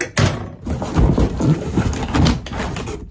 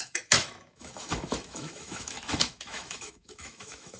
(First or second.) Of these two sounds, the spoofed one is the second